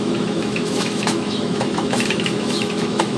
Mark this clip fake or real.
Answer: fake